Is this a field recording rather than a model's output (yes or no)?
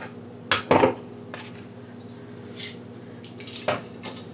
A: yes